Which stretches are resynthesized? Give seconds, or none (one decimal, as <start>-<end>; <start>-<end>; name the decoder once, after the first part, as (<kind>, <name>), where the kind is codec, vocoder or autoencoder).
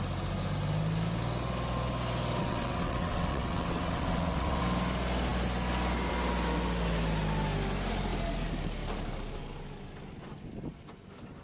2.4-4.6 (vocoder, WaveNeXt)